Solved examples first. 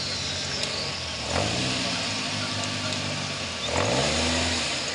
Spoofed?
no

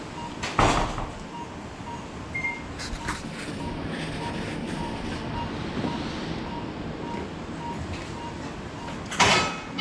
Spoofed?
no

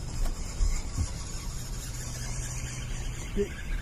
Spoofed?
no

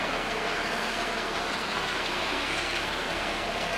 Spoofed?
yes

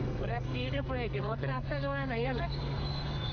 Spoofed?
yes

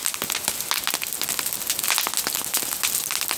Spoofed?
no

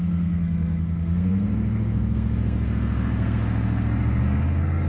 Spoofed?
yes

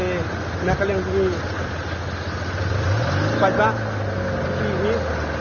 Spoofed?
no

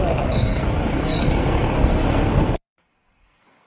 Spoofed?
yes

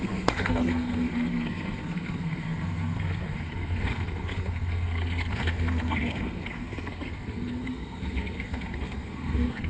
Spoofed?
yes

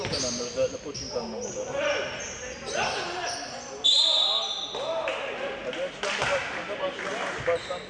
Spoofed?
no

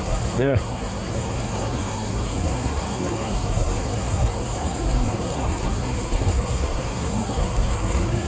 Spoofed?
yes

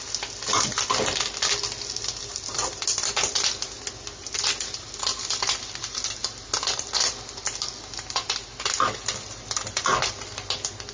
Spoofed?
no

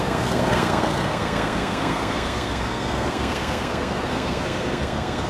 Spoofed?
yes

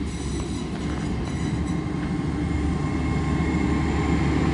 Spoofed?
no